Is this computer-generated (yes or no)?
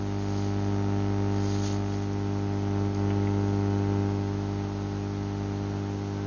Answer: no